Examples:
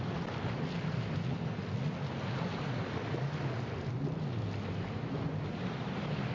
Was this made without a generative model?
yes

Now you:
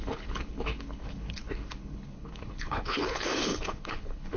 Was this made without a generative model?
no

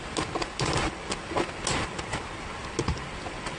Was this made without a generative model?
yes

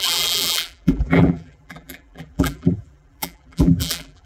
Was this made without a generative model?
no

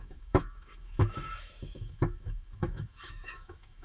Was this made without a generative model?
no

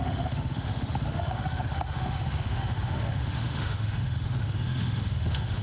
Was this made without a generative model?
no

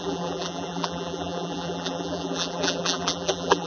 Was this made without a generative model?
no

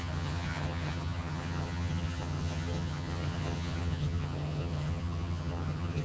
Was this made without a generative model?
no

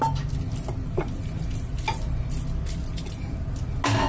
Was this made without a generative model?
yes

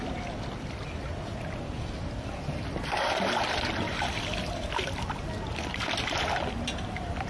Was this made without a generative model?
yes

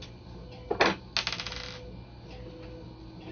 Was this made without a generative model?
yes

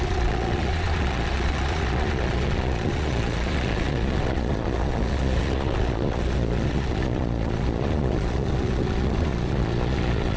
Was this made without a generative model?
no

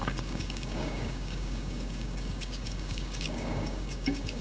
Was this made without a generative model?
no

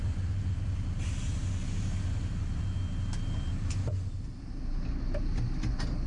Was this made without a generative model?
yes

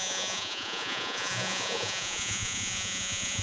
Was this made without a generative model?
no